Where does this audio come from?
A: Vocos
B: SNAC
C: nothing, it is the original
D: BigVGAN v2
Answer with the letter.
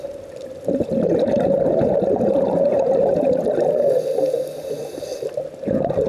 C